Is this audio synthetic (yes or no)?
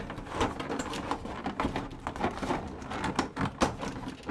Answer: no